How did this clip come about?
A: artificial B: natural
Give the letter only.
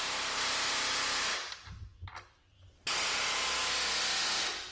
B